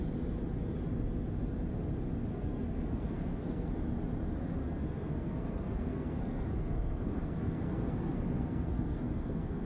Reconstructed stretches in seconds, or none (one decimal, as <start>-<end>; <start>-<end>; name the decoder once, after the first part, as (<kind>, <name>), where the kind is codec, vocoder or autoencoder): 2.3-3.7 (codec, SNAC); 4.6-9.7